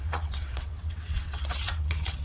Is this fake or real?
fake